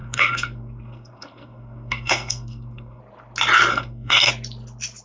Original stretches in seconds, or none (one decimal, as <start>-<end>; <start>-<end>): 3.0-3.7; 4.3-5.0